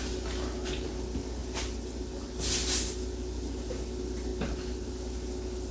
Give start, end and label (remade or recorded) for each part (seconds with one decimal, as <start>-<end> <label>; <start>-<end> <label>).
0.0-5.7 recorded